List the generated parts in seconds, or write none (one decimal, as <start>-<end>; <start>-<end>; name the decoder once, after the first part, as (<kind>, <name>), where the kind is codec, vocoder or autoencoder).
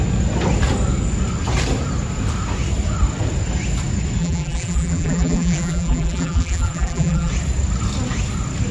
4.2-7.3 (vocoder, BigVGAN v2)